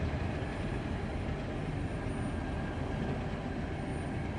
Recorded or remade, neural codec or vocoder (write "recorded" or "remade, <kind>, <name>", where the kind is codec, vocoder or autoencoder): recorded